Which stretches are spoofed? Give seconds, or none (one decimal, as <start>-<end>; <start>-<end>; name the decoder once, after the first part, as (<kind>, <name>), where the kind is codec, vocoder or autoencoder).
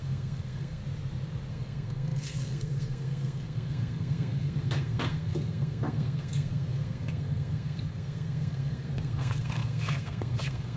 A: 0.0-0.8 (codec, SNAC); 1.5-10.8